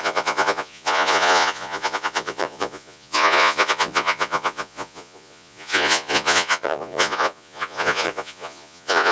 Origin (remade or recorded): remade